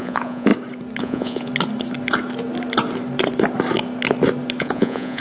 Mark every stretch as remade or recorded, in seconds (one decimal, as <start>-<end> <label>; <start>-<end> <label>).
0.0-0.5 remade; 0.5-1.0 recorded; 1.0-1.5 remade; 1.5-4.6 recorded; 4.6-5.2 remade